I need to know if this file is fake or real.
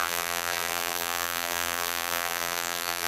fake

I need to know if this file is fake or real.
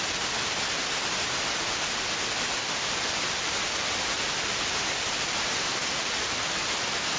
fake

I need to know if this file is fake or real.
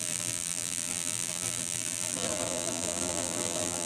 fake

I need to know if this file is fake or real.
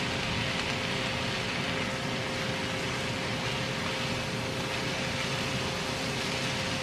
real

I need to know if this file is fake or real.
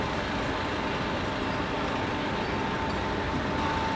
real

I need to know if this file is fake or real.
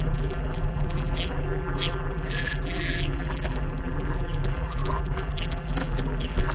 fake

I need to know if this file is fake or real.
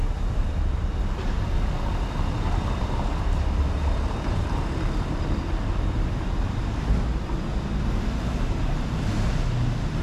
real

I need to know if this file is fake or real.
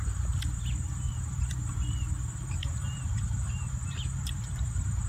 fake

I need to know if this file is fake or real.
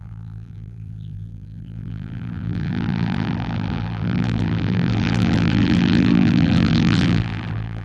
fake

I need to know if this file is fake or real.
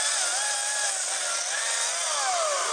real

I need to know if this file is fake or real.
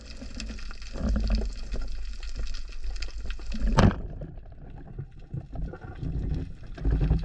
real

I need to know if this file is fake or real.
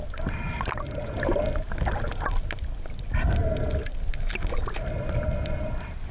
real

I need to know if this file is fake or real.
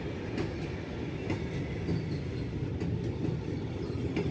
real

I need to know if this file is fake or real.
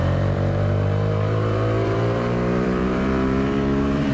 fake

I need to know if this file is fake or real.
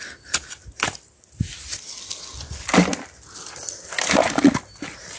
real